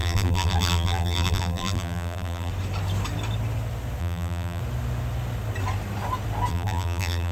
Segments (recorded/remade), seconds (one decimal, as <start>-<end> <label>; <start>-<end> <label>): 0.0-2.5 remade; 2.5-4.0 recorded; 4.0-4.6 remade; 4.6-6.5 recorded; 6.5-7.3 remade